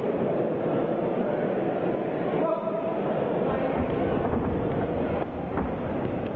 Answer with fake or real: fake